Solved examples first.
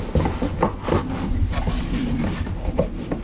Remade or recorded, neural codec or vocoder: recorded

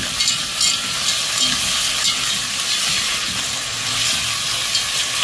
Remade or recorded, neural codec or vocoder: recorded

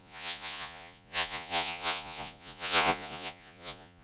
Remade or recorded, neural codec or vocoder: remade, vocoder, Vocos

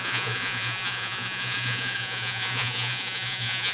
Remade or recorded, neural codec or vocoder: remade, vocoder, Vocos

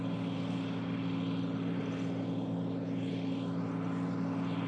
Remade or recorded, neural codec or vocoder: recorded